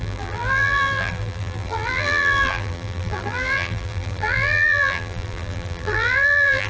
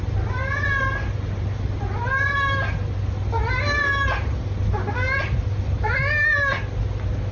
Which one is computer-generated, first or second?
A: first